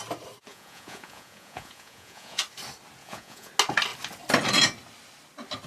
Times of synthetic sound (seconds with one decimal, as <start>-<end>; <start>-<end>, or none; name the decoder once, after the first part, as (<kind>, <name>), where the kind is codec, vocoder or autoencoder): 0.5-2.4 (vocoder, Vocos); 3.0-3.5